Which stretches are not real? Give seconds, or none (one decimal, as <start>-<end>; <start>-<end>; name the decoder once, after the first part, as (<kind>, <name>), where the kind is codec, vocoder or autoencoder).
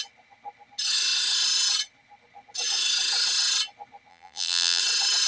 4.1-4.8 (vocoder, BigVGAN v2)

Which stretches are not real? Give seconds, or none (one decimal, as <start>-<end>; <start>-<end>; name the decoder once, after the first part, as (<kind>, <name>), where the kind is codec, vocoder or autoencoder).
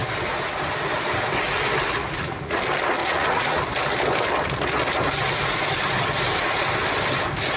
2.0-2.6 (vocoder, Vocos); 3.0-3.6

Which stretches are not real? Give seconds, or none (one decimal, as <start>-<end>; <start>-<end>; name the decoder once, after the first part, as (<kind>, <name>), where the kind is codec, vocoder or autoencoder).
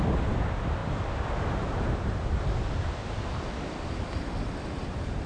0.8-4.0 (vocoder, BigVGAN v2)